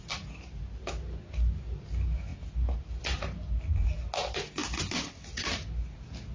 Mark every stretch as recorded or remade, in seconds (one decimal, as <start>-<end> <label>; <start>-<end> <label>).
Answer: 0.0-6.3 recorded